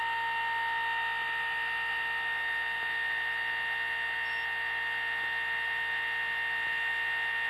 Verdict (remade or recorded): recorded